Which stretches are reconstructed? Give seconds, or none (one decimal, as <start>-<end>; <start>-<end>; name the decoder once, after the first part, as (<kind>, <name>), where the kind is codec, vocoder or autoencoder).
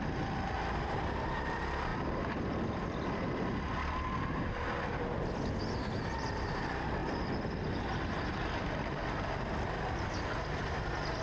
none